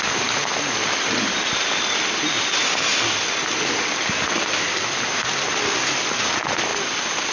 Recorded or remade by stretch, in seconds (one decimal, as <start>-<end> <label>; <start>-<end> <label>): 0.0-6.7 recorded; 6.7-7.3 remade